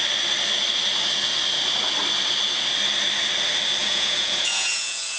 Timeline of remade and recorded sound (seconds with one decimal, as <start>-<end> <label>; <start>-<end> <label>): 0.0-3.8 recorded; 3.8-5.2 remade